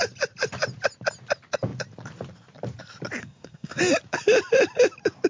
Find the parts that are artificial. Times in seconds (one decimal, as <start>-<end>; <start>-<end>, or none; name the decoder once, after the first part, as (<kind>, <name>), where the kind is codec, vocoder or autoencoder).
3.2-3.8 (codec, SNAC)